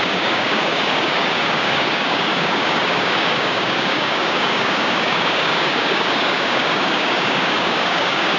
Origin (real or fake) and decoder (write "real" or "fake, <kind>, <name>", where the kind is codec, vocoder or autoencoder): fake, codec, DAC